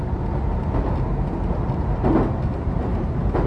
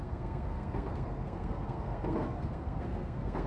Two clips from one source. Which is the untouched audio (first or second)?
first